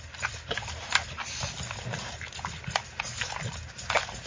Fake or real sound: real